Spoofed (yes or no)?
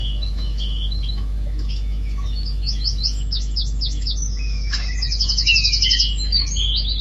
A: yes